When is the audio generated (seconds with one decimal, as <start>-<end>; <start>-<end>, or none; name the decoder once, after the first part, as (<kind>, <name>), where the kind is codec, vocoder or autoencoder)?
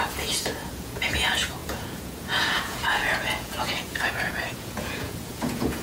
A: 0.0-5.8 (vocoder, Vocos)